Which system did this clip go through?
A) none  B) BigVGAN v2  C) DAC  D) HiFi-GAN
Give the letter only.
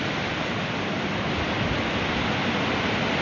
A